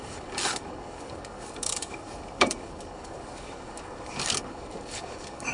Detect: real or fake fake